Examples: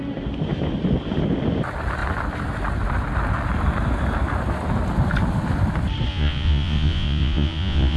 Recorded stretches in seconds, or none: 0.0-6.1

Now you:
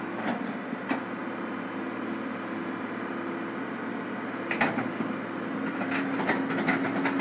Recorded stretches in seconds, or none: 0.0-7.2

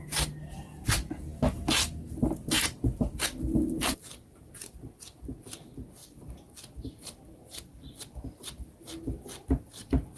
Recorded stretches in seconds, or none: 0.0-6.0

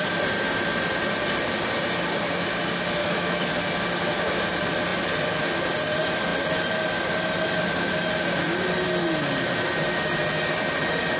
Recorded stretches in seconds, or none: 0.0-3.0; 3.5-11.2

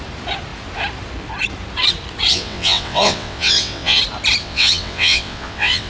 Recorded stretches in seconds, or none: 0.0-2.3; 4.0-4.4

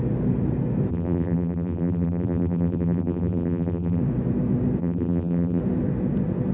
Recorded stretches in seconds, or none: 0.0-0.9; 4.0-4.8; 5.6-6.5